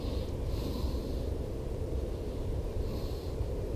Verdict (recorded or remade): recorded